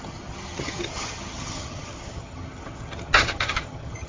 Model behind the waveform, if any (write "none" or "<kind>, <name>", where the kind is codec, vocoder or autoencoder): vocoder, HiFi-GAN